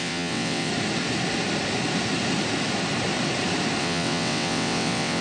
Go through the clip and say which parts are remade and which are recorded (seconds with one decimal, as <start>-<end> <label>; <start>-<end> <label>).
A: 0.0-0.7 remade; 0.7-3.8 recorded; 3.8-5.2 remade